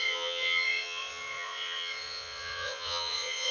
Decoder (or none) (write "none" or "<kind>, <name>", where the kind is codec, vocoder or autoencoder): vocoder, Vocos